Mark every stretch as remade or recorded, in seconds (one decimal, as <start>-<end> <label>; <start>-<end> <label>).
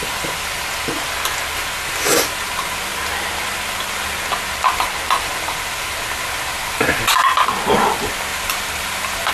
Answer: 0.0-8.3 recorded; 8.3-9.3 remade